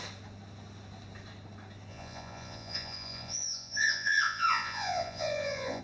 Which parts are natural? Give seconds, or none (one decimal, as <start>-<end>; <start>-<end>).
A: 0.0-1.9